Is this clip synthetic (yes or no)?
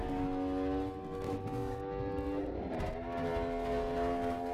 no